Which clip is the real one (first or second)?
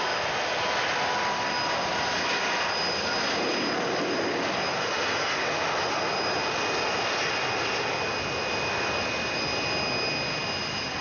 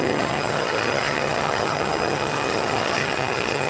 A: first